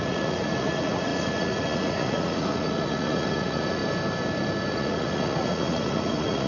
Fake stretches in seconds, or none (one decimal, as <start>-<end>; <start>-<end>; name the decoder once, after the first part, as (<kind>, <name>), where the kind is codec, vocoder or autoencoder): 0.0-3.8 (vocoder, Vocos); 4.7-6.5